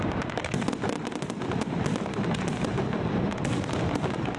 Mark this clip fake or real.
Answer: real